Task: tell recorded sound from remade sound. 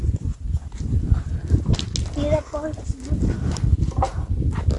recorded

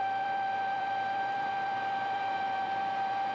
remade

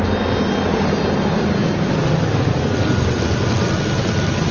recorded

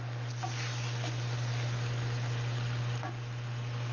recorded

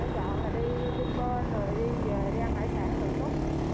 recorded